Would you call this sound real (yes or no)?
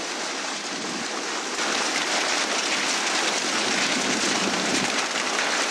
yes